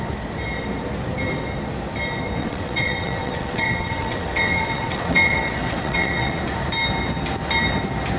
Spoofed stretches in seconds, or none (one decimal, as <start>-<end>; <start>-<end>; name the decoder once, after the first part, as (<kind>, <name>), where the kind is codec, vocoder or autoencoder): 2.4-6.4 (vocoder, WaveNeXt)